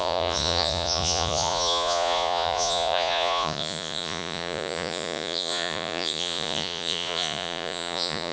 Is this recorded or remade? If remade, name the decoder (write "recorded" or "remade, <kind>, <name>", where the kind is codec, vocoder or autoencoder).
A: remade, vocoder, Vocos